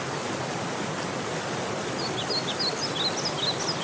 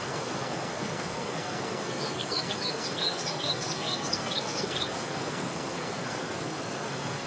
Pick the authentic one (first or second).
first